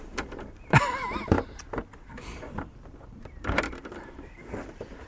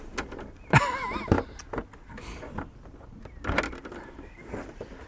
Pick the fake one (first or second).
first